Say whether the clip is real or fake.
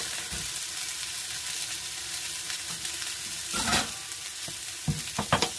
real